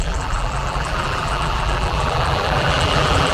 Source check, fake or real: fake